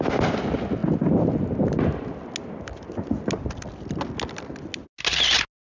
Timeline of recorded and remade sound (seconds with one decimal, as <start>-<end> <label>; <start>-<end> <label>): 0.0-5.6 recorded